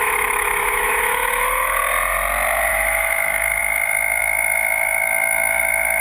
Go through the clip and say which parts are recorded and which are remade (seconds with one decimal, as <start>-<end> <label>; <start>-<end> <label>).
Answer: 0.0-1.8 remade; 1.8-2.7 recorded; 2.7-6.0 remade